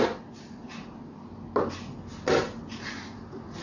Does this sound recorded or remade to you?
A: recorded